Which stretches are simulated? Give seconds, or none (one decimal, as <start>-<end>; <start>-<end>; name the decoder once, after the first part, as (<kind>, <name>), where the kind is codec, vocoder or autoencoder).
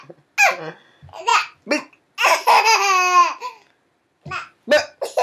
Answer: none